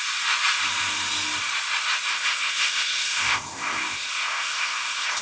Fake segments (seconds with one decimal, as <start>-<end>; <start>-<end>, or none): 2.1-5.2